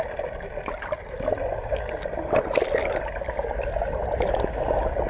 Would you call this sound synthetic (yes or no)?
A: no